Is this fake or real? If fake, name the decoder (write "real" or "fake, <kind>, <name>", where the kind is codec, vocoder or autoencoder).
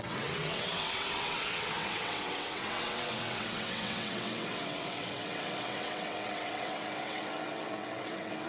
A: fake, vocoder, WaveNeXt